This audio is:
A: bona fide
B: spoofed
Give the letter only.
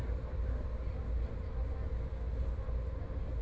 A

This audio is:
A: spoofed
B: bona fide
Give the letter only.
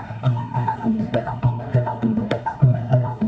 A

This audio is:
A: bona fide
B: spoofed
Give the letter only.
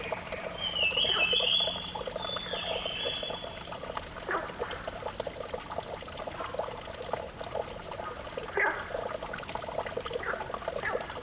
A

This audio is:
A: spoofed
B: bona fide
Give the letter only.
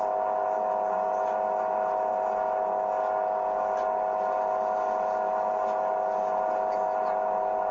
B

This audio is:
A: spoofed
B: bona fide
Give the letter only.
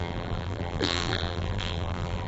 A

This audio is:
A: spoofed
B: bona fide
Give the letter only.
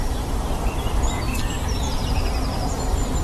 A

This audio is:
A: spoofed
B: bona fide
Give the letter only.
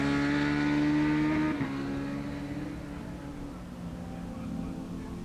B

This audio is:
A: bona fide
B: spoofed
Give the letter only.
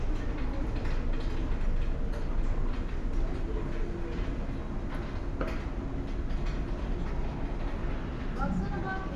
A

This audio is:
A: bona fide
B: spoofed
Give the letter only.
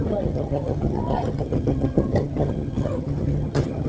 B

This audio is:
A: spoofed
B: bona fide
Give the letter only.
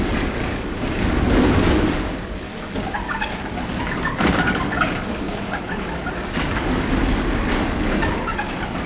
A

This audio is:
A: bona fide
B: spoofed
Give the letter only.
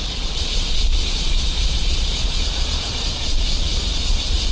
B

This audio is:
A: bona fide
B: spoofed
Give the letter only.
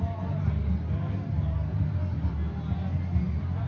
A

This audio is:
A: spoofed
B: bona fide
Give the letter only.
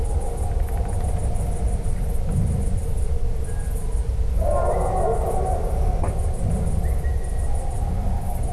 B